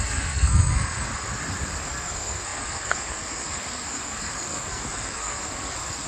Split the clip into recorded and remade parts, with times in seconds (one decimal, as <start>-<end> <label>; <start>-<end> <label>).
0.0-1.1 remade; 1.1-1.8 recorded; 1.8-6.1 remade